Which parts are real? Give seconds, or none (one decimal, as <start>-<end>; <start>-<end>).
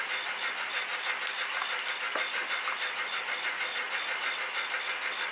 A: 0.0-5.3